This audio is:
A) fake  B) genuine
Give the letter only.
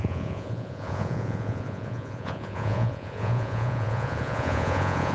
A